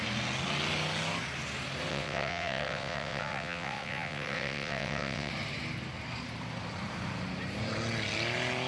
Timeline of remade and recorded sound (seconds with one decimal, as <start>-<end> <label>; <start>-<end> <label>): 0.0-1.9 recorded; 1.9-5.3 remade; 5.3-8.7 recorded